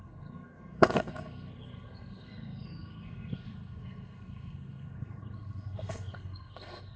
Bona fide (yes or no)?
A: no